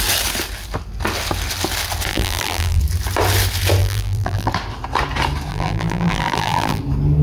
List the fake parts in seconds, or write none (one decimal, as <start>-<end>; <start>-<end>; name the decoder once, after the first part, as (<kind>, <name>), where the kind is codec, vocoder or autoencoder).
2.1-2.8 (vocoder, BigVGAN v2); 3.8-4.5; 5.5-6.8